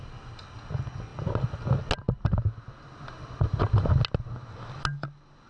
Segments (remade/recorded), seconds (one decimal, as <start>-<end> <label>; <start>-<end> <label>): 0.0-5.5 recorded